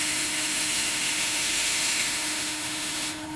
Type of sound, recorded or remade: remade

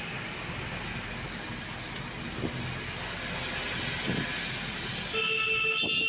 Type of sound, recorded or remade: recorded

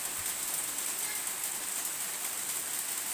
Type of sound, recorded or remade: recorded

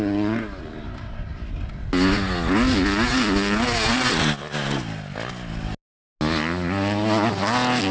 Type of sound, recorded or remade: recorded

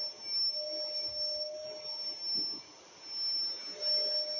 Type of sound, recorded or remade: recorded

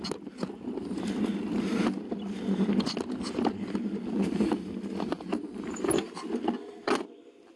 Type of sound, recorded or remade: recorded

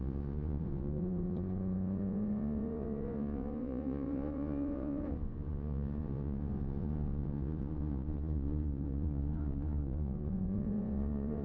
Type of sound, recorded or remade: remade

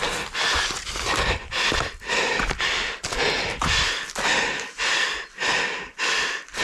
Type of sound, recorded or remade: recorded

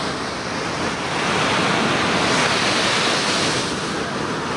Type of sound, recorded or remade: recorded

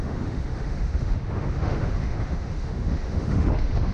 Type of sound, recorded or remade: remade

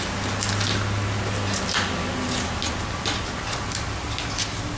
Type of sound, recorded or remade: recorded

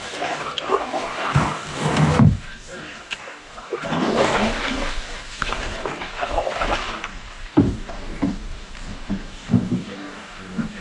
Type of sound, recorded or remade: remade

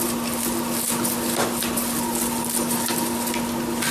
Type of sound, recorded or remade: recorded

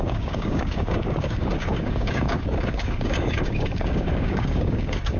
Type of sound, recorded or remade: remade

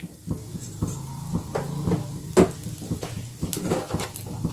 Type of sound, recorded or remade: recorded